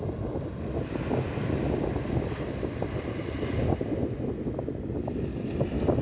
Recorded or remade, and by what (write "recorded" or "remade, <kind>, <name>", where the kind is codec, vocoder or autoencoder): recorded